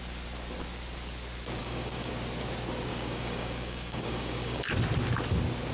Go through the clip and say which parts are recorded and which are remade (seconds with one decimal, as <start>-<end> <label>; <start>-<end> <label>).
0.0-1.6 recorded; 1.6-2.1 remade; 2.1-2.9 recorded; 2.9-4.7 remade; 4.7-5.7 recorded